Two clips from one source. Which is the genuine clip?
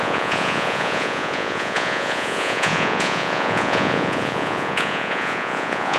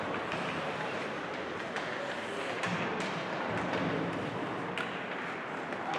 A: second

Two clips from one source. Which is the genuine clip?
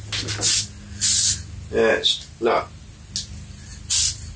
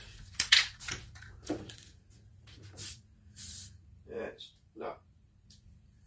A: first